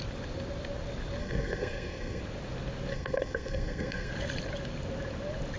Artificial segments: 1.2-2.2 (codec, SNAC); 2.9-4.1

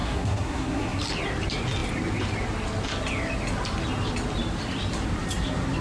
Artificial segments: 0.0-1.0 (codec, SNAC)

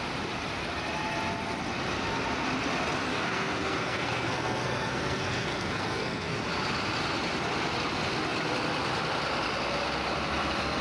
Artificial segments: 3.1-6.4 (codec, SNAC)

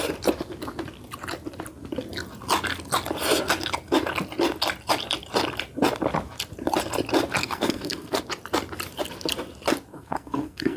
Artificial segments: 7.4-8.2 (codec, SNAC); 9.9-10.8

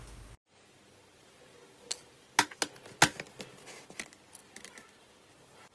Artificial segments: none

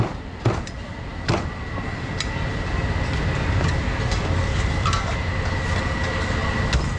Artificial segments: none

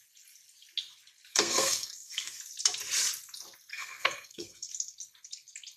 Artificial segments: 1.3-2.4 (codec, SNAC); 3.7-4.7

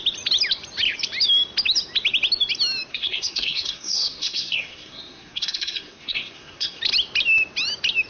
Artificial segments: 2.9-6.8 (codec, SNAC)